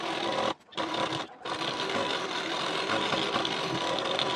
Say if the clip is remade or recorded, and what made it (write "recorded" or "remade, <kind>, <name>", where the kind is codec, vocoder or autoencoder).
recorded